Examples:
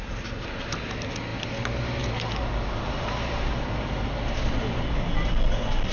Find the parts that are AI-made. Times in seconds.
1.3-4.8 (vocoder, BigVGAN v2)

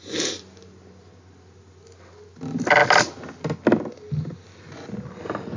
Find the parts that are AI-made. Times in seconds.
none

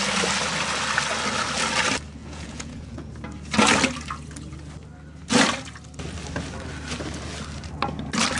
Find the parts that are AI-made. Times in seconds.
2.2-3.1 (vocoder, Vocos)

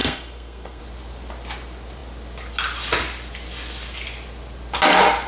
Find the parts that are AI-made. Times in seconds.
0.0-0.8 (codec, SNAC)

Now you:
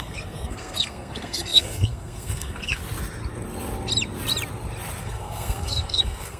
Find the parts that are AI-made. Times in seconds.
0.0-2.8 (codec, SNAC); 5.0-6.4

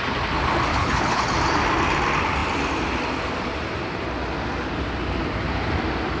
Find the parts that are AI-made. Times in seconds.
0.7-1.2 (codec, HILCodec)

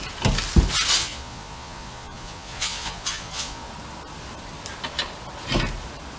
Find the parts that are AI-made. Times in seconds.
1.0-3.7 (vocoder, Vocos)